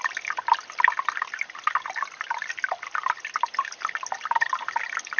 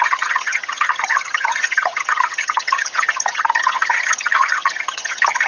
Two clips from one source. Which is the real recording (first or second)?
first